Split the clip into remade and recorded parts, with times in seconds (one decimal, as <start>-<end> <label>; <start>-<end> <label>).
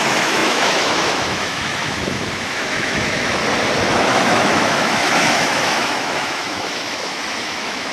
0.0-3.4 remade; 3.4-3.9 recorded; 3.9-7.9 remade